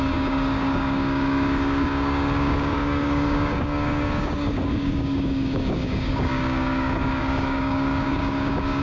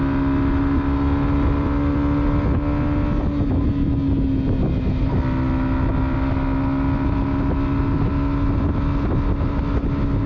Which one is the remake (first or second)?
first